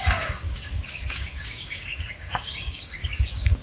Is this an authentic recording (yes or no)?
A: no